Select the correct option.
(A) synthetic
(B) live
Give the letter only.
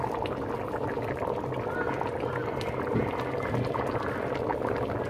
B